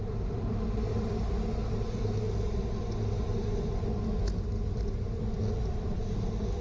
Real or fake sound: real